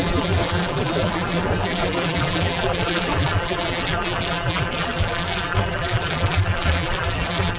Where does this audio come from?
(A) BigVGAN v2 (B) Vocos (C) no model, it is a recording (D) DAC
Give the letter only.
A